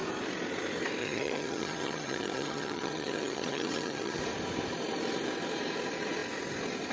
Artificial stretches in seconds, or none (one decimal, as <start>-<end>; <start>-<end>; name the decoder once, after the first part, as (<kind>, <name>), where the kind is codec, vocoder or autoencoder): 1.0-4.2 (vocoder, HiFi-GAN)